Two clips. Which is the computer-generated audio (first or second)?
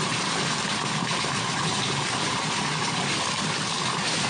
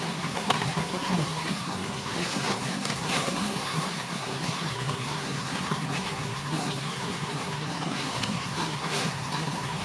second